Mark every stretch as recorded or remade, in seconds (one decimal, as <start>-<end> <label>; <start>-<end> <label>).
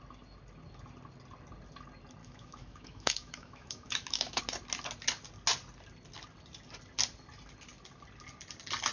0.0-2.2 recorded; 2.2-4.4 remade; 4.4-8.9 recorded